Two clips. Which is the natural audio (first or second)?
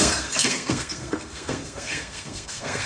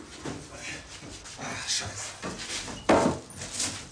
second